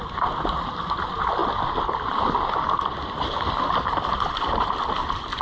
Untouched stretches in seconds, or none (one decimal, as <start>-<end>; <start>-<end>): 0.0-5.4